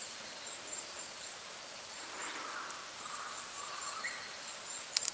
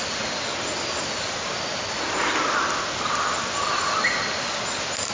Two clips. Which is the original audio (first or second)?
second